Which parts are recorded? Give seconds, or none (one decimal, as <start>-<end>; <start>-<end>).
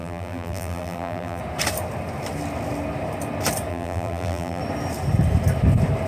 1.4-3.7; 4.6-6.1